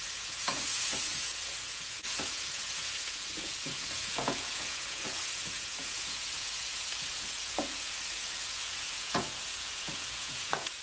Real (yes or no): no